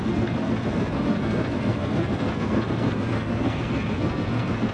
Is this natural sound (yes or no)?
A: no